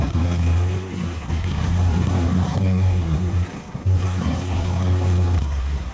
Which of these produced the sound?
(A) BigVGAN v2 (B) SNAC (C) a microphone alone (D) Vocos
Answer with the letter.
B